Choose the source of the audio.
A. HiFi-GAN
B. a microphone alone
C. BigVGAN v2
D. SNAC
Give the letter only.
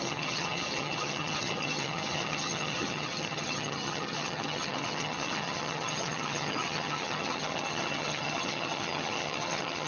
A